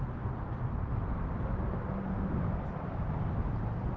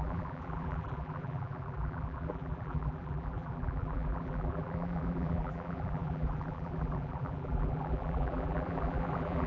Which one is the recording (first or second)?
first